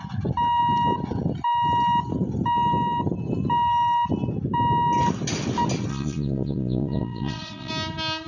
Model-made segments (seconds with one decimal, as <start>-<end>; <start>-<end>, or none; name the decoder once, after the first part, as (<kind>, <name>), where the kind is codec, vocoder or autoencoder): 5.9-7.7 (vocoder, Vocos)